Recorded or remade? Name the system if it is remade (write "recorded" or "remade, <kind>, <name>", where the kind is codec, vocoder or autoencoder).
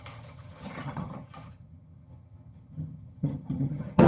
remade, vocoder, HiFi-GAN